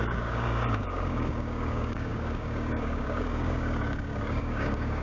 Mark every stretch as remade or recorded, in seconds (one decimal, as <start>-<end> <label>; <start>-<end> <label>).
0.0-5.0 remade